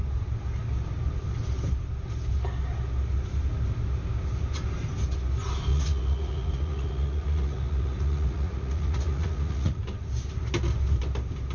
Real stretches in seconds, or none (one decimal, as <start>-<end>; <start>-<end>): 0.0-5.7; 9.8-11.5